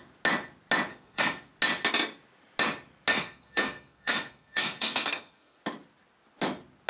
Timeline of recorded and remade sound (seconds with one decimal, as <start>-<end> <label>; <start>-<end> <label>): 0.0-0.9 recorded; 0.9-1.5 remade; 1.5-3.1 recorded; 3.1-5.6 remade; 5.6-6.9 recorded